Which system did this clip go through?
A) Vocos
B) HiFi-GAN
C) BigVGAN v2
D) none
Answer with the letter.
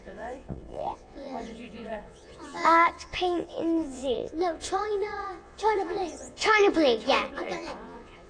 A